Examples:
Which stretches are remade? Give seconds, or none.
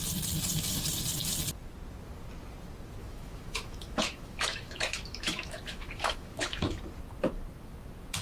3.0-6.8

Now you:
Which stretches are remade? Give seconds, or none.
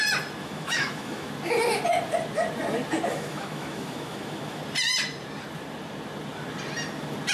0.4-1.3; 3.1-4.6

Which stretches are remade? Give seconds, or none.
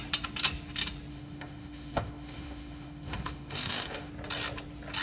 1.1-4.1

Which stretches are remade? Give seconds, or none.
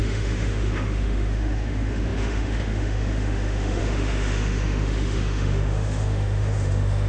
0.0-7.1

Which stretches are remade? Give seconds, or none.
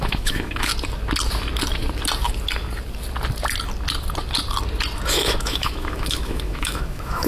0.0-0.7; 5.1-7.3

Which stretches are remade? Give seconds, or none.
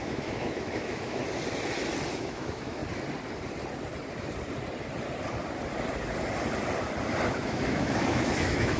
0.0-1.2; 2.1-2.8; 7.3-8.8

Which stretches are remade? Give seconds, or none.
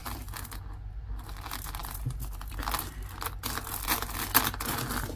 none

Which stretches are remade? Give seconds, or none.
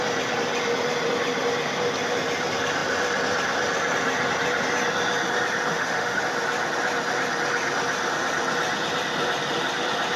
5.7-6.2